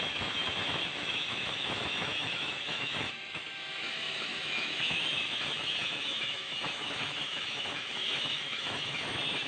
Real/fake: fake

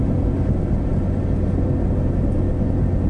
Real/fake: real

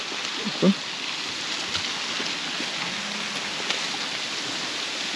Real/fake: real